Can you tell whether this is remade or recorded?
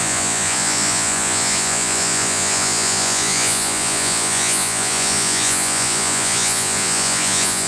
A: remade